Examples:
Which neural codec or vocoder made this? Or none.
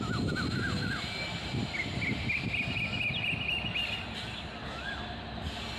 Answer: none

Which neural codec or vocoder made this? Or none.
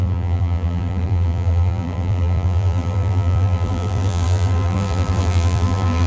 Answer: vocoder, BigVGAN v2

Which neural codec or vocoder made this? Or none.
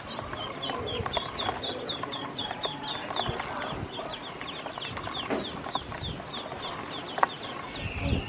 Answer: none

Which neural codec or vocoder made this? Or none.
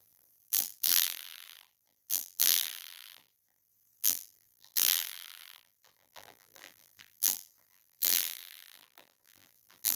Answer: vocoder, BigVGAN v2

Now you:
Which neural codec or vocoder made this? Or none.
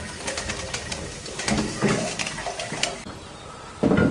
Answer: none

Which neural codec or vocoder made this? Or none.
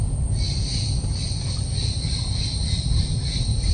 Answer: none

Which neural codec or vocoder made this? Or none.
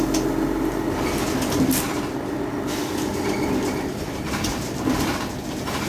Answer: none